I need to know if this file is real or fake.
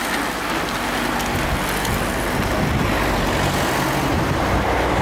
real